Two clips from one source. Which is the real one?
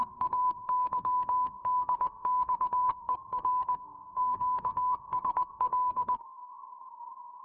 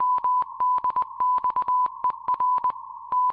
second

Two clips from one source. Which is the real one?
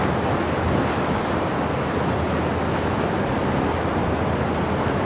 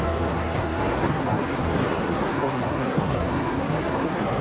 first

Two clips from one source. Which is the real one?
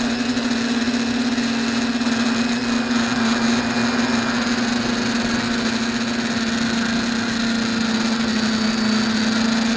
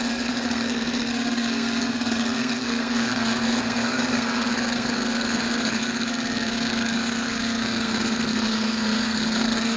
first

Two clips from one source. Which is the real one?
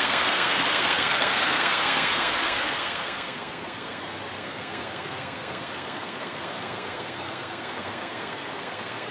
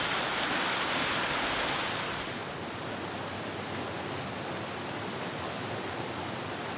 second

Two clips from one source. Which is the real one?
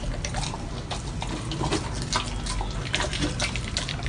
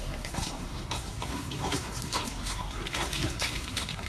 first